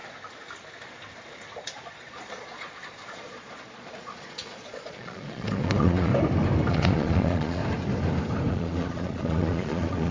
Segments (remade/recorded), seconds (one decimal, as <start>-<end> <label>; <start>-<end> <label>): 0.0-1.6 recorded; 1.6-6.1 remade; 6.1-6.7 recorded; 6.7-7.6 remade; 7.6-8.5 recorded; 8.5-10.1 remade